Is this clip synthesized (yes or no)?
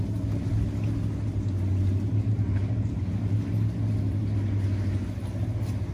no